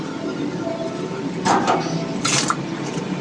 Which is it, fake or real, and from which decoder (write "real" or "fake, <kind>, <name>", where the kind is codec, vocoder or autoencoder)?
real